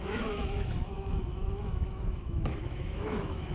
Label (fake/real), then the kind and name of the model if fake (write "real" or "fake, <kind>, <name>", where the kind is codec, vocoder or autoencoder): fake, autoencoder, DAC-VAE